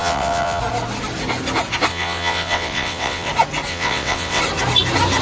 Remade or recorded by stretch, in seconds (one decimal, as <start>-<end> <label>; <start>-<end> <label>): 0.0-0.6 remade; 0.6-1.9 recorded; 1.9-3.3 remade; 3.3-3.7 recorded; 3.7-4.4 remade; 4.4-5.2 recorded